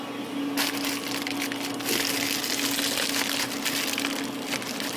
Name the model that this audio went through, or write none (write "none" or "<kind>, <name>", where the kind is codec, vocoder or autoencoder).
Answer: none